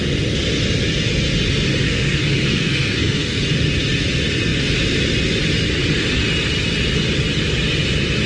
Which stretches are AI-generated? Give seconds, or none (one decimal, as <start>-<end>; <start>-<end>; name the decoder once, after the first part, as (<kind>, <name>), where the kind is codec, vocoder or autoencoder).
1.8-3.4 (codec, SNAC)